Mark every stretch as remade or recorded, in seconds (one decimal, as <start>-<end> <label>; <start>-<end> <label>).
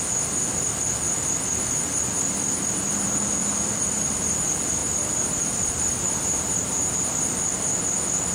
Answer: 0.0-3.4 recorded; 3.4-4.1 remade; 4.1-4.8 recorded; 4.8-6.9 remade; 6.9-8.3 recorded